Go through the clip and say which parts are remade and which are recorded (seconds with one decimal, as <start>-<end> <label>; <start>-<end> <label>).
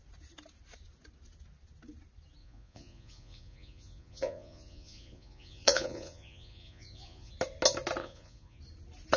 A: 0.0-2.4 recorded; 2.4-7.3 remade; 7.3-8.0 recorded; 8.0-8.6 remade; 8.6-9.2 recorded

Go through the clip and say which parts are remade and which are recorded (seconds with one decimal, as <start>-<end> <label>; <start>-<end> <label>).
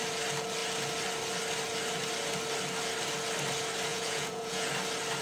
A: 0.0-3.9 recorded; 3.9-4.7 remade; 4.7-5.2 recorded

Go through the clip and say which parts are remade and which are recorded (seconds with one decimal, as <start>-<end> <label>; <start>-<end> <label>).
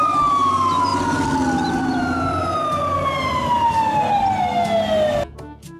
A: 0.0-5.8 recorded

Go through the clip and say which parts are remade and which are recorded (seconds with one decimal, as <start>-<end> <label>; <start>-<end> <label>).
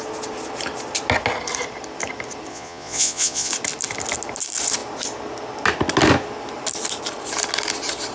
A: 0.0-2.5 recorded; 2.5-3.5 remade; 3.5-8.1 recorded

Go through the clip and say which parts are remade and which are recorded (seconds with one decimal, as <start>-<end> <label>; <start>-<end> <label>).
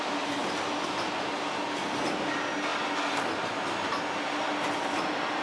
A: 0.0-5.4 recorded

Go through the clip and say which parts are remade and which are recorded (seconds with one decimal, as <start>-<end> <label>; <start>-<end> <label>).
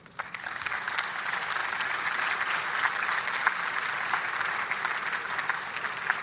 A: 0.0-6.2 recorded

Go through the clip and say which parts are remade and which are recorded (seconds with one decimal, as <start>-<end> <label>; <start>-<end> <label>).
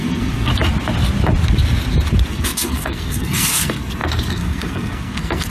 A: 0.0-0.5 remade; 0.5-2.3 recorded; 2.3-5.5 remade